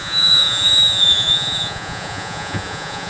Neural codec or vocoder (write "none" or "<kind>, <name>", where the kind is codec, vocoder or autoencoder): vocoder, Vocos